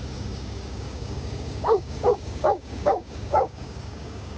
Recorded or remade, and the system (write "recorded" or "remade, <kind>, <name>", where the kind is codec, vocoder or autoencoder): remade, codec, DAC